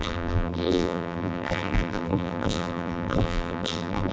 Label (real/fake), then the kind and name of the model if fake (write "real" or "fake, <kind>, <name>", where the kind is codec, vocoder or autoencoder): fake, vocoder, BigVGAN v2